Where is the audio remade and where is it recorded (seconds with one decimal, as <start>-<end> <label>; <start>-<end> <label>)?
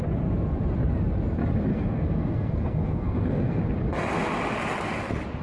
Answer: 0.0-1.7 recorded; 1.7-3.6 remade; 3.6-5.4 recorded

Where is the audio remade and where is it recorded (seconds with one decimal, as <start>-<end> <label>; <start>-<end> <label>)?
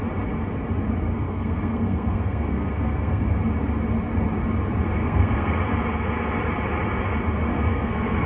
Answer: 0.0-1.1 recorded; 1.1-3.2 remade; 3.2-5.0 recorded; 5.0-5.6 remade; 5.6-7.5 recorded; 7.5-8.3 remade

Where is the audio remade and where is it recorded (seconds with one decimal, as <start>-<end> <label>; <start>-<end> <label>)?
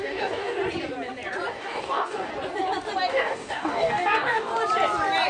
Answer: 0.0-0.6 remade; 0.6-1.5 recorded; 1.5-2.3 remade; 2.3-3.1 recorded; 3.1-4.5 remade; 4.5-5.3 recorded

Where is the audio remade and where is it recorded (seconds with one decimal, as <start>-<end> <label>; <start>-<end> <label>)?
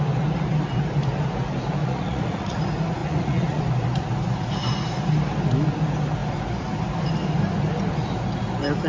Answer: 0.0-1.8 recorded; 1.8-2.6 remade; 2.6-3.0 recorded; 3.0-3.6 remade; 3.6-8.9 recorded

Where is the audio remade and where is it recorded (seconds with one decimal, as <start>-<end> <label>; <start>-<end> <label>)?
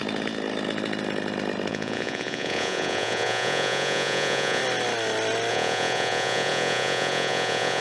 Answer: 0.0-1.7 recorded; 1.7-4.6 remade; 4.6-5.5 recorded; 5.5-7.8 remade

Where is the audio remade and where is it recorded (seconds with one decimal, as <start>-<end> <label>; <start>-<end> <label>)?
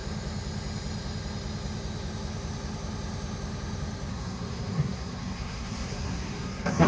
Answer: 0.0-4.1 recorded; 4.1-6.9 remade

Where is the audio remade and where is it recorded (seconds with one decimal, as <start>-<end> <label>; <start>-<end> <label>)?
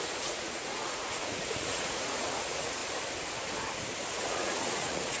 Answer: 0.0-2.8 remade; 2.8-4.1 recorded; 4.1-5.2 remade